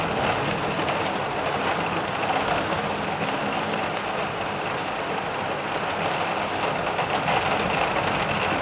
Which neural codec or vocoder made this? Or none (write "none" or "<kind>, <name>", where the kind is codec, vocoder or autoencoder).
none